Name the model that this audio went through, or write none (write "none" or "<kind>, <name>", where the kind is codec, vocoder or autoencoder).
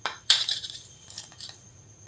vocoder, Vocos